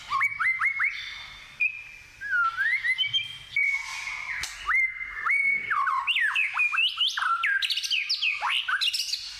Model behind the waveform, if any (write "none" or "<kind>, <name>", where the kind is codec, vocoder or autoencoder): none